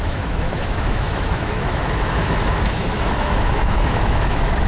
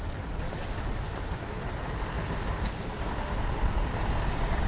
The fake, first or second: first